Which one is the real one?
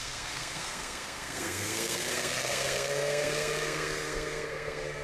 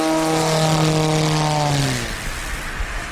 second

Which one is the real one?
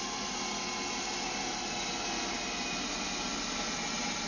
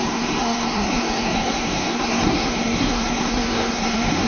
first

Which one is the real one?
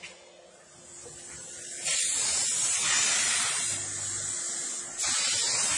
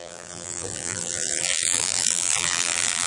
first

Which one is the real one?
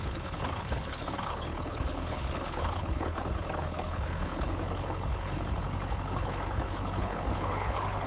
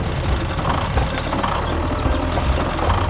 second